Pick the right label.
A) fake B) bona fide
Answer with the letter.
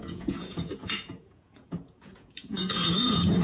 A